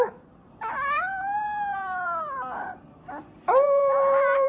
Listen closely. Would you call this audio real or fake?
fake